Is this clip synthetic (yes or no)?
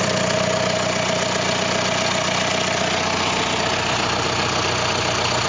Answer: no